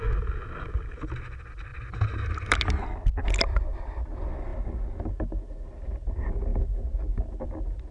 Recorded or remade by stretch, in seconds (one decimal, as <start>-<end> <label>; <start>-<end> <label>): 0.0-7.9 recorded